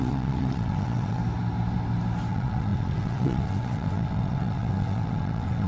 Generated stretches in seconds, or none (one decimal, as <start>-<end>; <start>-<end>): 0.0-1.2; 2.3-5.7